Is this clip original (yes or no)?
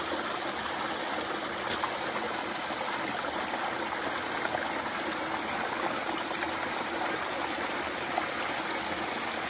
yes